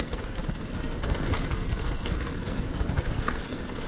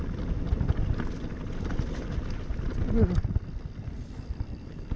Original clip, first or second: second